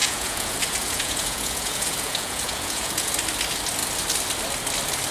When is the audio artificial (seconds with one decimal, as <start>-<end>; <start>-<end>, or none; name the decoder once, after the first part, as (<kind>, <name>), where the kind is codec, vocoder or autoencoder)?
0.0-3.1 (vocoder, Vocos)